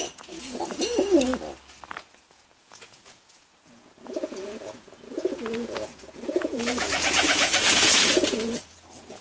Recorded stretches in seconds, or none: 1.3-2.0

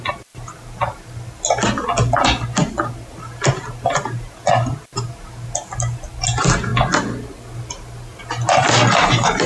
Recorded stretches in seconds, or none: 0.0-9.5

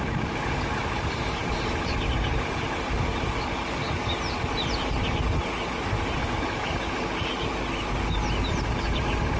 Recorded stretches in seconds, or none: 0.0-6.2; 6.7-9.4